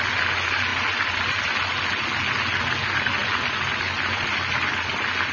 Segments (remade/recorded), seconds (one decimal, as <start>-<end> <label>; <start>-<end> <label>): 0.0-5.3 recorded